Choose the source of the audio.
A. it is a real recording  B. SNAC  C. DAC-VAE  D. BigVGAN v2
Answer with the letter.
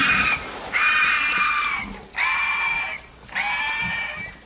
A